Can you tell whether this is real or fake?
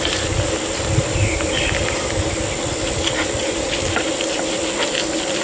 real